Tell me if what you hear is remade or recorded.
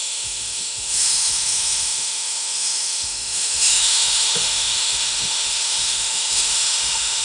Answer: remade